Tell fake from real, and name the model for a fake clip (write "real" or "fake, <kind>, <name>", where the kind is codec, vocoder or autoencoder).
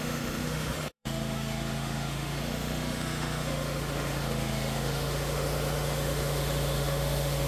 fake, autoencoder, DAC-VAE